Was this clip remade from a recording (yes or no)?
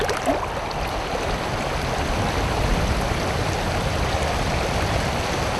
no